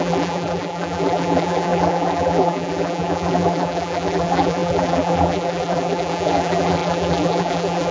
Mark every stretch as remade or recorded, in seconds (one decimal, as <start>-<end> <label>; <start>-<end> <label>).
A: 0.0-7.9 remade